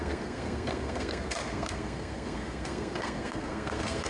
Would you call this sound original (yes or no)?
no